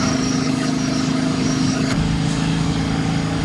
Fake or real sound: fake